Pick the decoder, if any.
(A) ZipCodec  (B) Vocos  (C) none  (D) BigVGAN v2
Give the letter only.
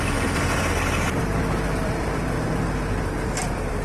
D